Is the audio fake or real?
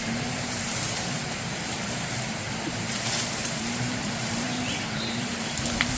fake